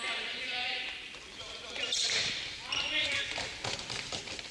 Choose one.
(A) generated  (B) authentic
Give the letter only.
A